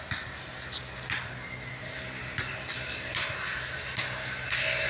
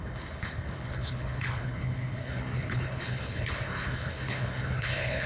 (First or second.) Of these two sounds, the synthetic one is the second